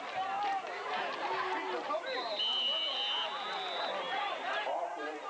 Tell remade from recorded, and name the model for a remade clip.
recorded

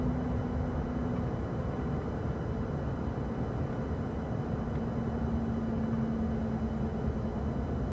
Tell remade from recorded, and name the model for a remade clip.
recorded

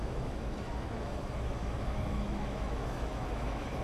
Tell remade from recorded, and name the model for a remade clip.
remade, autoencoder, DAC-VAE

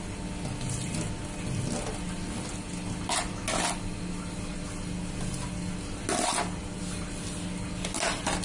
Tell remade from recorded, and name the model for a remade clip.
recorded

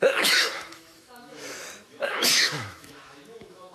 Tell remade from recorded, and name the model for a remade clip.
remade, autoencoder, DAC-VAE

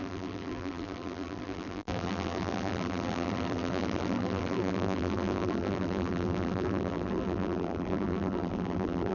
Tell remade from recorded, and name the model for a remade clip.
remade, vocoder, BigVGAN v2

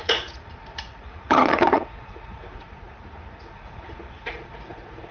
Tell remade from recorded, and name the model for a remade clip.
remade, vocoder, Vocos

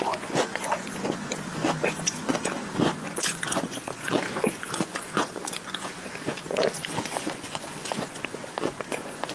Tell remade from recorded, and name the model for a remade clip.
remade, vocoder, Vocos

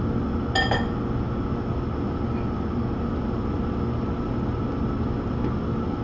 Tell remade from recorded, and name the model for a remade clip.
recorded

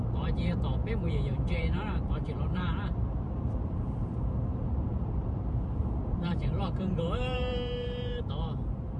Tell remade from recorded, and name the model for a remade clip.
remade, vocoder, BigVGAN v2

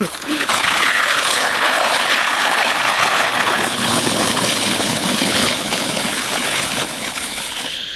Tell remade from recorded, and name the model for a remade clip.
remade, codec, HILCodec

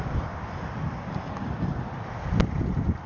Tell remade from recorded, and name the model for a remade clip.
recorded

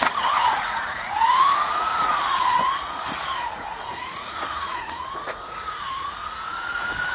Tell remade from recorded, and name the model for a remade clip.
remade, vocoder, Vocos